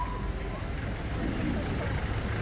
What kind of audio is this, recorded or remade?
recorded